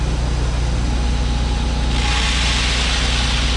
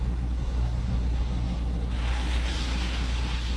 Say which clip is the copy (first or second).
second